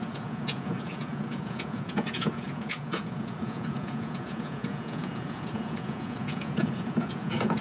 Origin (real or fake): fake